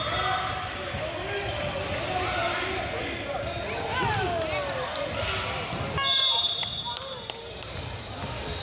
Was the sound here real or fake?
real